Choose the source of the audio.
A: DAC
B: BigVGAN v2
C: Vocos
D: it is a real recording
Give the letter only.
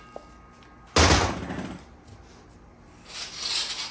D